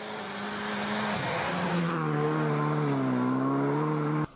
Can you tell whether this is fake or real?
real